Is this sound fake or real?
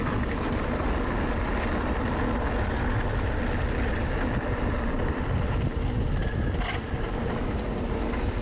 real